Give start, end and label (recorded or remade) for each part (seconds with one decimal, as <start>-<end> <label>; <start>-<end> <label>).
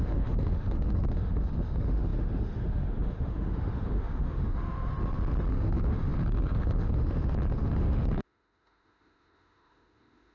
0.0-4.9 remade; 4.9-5.5 recorded; 5.5-10.3 remade